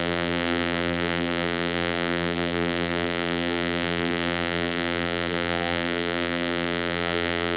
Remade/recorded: remade